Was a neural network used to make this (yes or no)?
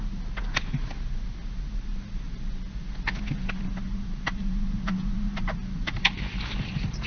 no